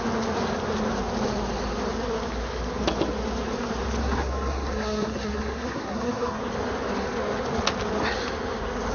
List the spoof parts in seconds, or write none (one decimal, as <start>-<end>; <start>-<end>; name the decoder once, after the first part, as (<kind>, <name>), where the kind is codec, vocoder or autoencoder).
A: 4.0-6.4 (codec, SNAC)